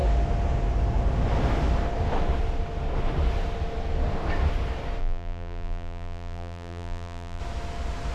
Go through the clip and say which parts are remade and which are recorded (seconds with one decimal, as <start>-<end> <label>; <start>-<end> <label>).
0.0-5.0 recorded; 5.0-7.4 remade; 7.4-8.1 recorded